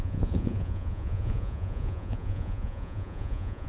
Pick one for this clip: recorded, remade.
remade